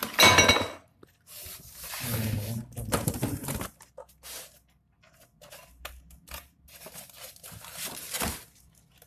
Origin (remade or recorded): recorded